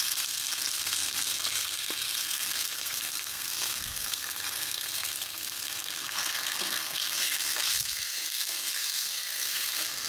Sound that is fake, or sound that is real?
fake